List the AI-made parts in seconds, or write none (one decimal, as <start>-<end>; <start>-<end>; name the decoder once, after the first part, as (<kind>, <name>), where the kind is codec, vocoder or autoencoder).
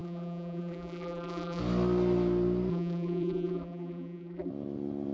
0.0-1.6 (vocoder, BigVGAN v2); 2.7-4.5